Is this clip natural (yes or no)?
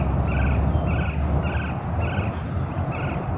yes